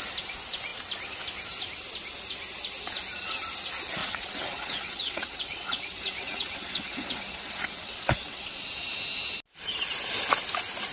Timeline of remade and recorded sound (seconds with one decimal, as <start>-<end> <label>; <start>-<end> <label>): 0.0-4.0 recorded; 4.0-8.7 remade; 8.7-10.9 recorded